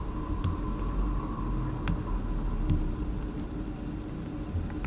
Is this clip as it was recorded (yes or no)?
yes